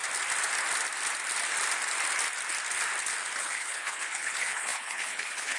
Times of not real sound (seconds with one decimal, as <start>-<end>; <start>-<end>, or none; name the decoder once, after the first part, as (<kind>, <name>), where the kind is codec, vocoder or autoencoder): 3.4-5.6 (codec, HILCodec)